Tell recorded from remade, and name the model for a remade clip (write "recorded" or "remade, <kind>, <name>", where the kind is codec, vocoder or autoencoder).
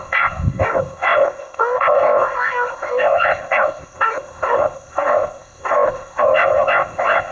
remade, codec, ZipCodec